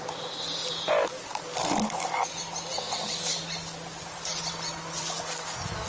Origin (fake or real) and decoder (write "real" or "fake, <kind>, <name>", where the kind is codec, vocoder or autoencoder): real